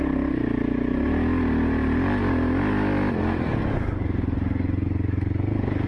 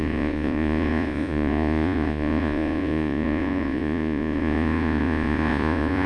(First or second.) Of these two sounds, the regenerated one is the second